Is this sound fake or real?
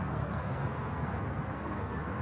fake